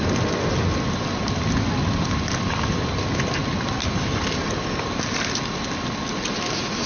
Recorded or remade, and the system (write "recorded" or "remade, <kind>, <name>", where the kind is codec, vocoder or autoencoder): recorded